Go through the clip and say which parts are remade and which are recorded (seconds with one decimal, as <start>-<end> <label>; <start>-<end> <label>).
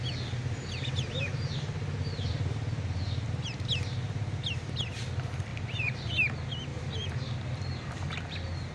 0.0-5.5 recorded; 5.5-6.1 remade; 6.1-6.7 recorded; 6.7-7.9 remade; 7.9-8.7 recorded